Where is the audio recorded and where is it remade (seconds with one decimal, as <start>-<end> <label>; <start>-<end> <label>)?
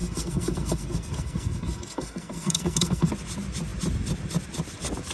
0.0-3.1 remade; 3.1-5.1 recorded